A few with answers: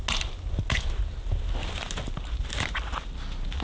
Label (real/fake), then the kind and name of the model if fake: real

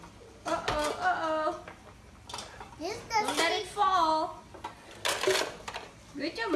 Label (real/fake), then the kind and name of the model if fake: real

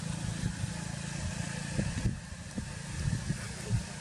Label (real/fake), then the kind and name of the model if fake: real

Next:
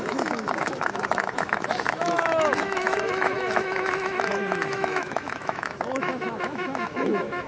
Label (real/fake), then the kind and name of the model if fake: fake, autoencoder, DAC-VAE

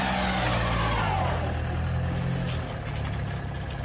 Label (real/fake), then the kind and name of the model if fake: real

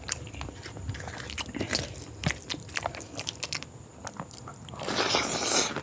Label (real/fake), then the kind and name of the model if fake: real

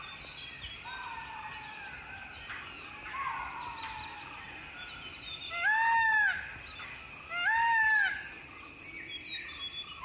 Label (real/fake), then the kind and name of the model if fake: real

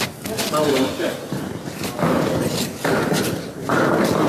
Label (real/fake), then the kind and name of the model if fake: real